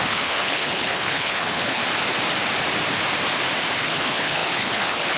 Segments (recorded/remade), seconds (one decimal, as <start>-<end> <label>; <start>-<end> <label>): 0.0-1.8 remade; 1.8-3.8 recorded; 3.8-5.2 remade